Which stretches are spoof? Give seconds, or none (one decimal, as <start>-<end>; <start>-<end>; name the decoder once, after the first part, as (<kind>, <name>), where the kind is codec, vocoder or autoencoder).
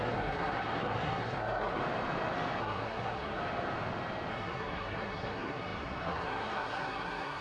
0.0-1.8 (codec, SNAC); 2.6-3.4; 4.3-7.4